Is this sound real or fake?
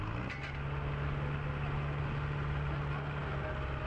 real